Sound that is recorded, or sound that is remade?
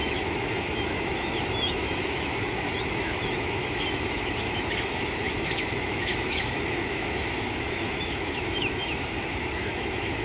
remade